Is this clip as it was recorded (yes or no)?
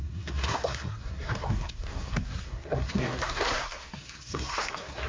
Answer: no